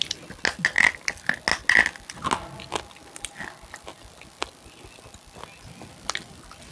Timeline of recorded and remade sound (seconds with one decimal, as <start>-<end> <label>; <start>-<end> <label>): 0.0-6.7 recorded